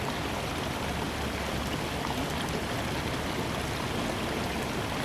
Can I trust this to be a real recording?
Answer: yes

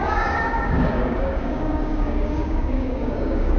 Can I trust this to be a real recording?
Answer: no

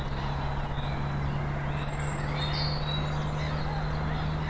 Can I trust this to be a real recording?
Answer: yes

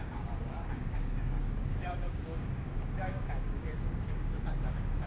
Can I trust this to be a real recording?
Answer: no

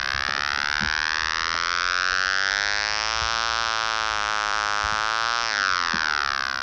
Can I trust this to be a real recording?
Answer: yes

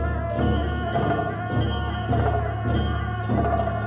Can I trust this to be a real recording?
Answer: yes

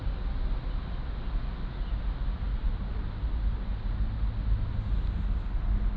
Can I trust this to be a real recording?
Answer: yes